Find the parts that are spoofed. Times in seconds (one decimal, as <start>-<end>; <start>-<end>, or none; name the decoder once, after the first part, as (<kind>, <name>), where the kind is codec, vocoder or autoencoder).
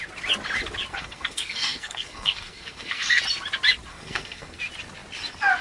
0.9-3.2 (codec, SNAC); 3.9-4.6